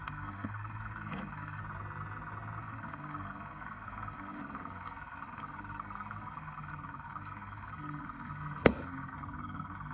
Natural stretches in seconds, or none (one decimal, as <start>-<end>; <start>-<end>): 1.6-2.6